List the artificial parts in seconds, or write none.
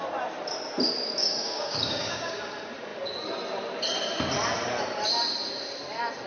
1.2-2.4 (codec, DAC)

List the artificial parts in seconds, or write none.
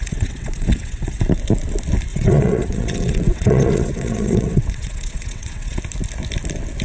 0.0-1.2 (vocoder, WaveNeXt); 2.1-5.8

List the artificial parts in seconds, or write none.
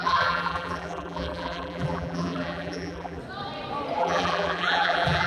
0.0-3.2 (vocoder, BigVGAN v2); 4.0-5.3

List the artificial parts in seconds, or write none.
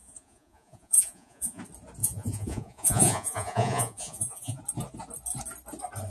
0.0-1.6 (vocoder, Vocos); 2.0-4.6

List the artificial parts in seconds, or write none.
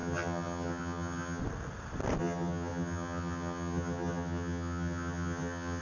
0.0-1.4 (vocoder, HiFi-GAN); 2.2-5.8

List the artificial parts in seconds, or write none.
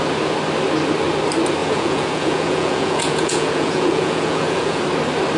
1.6-4.8 (vocoder, Vocos)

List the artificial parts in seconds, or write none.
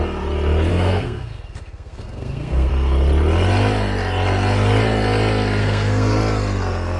0.7-2.7 (codec, SNAC); 5.6-6.2